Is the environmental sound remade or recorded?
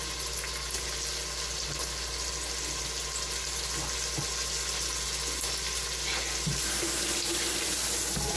recorded